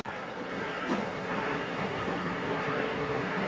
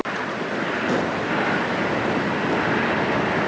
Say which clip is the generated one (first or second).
first